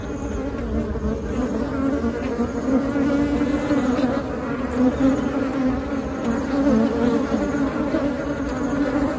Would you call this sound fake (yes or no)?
no